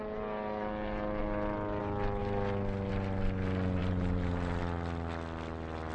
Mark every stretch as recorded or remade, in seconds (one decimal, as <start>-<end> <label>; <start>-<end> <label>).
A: 0.0-3.8 recorded; 3.8-4.6 remade; 4.6-5.9 recorded